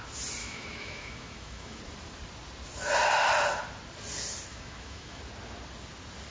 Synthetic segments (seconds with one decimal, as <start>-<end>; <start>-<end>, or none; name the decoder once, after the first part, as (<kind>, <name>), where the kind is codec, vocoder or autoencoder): 0.4-1.8 (autoencoder, DAC-VAE); 4.5-5.2